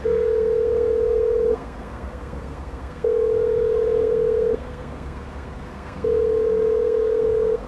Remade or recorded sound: remade